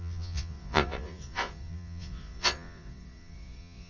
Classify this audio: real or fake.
fake